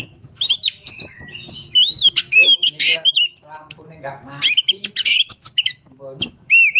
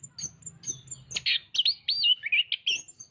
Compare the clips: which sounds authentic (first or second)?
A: second